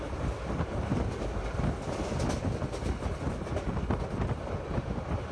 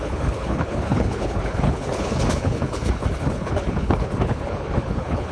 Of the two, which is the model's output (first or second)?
second